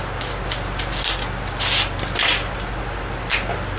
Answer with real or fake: real